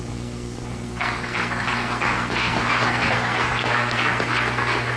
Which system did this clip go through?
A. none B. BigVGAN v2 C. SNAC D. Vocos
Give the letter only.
C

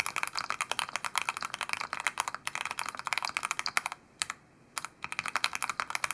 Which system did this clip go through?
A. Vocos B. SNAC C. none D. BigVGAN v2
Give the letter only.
C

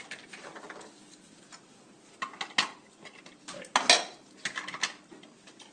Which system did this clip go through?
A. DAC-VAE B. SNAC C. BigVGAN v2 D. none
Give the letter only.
D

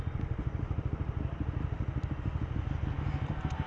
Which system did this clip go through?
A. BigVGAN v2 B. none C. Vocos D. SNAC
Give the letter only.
B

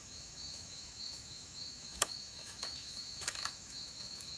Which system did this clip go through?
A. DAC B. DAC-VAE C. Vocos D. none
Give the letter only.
B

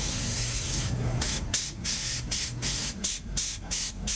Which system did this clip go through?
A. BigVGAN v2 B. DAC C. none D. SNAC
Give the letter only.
D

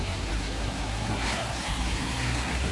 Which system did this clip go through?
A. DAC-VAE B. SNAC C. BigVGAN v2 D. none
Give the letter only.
B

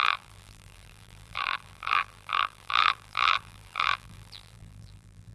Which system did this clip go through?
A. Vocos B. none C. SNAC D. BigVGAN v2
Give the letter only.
D